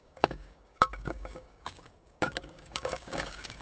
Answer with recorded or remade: remade